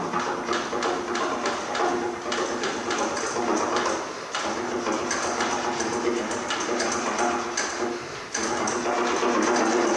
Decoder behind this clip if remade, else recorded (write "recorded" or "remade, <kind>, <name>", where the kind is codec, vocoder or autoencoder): recorded